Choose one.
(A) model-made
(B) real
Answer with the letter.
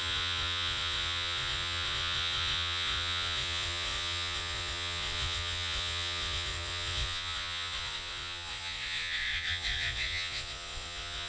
A